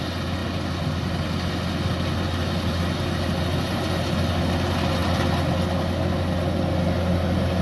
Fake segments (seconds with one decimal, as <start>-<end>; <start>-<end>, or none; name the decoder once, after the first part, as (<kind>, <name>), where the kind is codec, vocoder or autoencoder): none